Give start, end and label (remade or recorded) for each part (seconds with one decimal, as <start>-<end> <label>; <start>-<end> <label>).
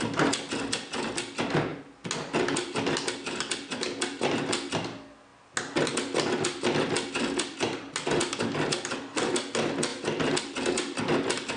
0.0-11.6 recorded